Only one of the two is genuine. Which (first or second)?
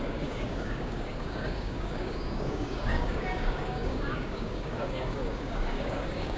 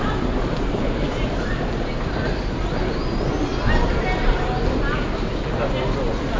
second